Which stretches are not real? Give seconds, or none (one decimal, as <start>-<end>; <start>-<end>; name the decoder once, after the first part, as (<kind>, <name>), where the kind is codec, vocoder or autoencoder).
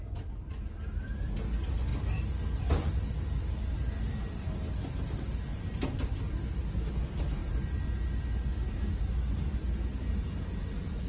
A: none